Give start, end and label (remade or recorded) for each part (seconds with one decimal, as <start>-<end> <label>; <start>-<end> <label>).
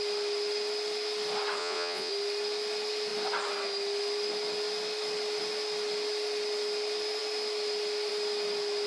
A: 0.0-1.6 recorded; 1.6-2.1 remade; 2.1-8.9 recorded